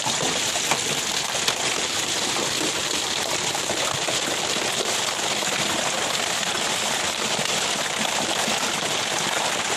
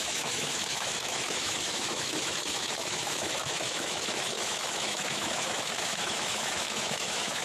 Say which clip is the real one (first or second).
first